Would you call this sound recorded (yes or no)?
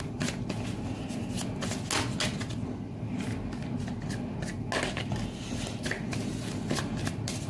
yes